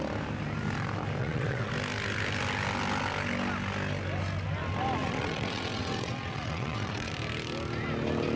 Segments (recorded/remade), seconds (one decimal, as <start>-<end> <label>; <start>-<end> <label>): 0.0-1.2 recorded; 1.2-1.7 remade; 1.7-5.0 recorded; 5.0-7.1 remade; 7.1-8.4 recorded